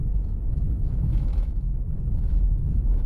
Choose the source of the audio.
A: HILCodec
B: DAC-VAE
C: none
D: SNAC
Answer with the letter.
B